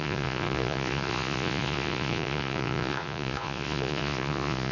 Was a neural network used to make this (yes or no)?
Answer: yes